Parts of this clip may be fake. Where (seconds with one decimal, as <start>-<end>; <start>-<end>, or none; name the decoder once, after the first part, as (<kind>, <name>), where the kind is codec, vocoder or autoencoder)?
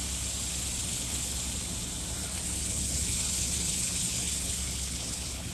0.8-1.4 (codec, HILCodec); 2.2-5.5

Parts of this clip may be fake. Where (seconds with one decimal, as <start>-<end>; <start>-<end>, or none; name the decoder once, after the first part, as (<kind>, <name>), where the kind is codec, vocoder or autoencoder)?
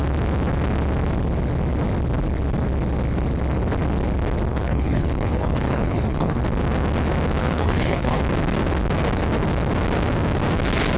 4.5-6.4 (codec, HILCodec); 7.4-8.2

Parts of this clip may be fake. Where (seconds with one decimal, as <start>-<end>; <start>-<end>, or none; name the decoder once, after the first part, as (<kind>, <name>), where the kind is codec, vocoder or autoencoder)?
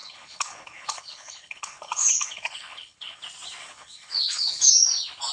0.0-3.2 (codec, HILCodec); 3.6-4.7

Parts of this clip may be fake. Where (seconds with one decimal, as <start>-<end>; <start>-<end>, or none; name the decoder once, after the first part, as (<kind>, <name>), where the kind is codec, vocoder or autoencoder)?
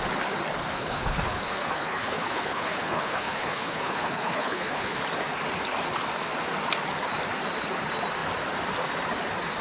0.7-5.0 (codec, HILCodec)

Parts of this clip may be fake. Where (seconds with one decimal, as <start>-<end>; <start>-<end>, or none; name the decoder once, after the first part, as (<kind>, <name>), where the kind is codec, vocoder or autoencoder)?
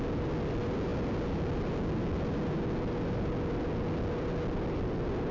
none